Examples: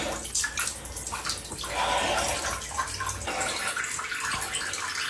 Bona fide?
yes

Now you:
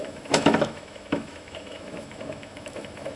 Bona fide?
no